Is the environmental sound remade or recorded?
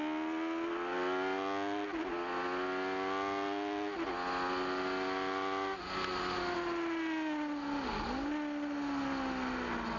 recorded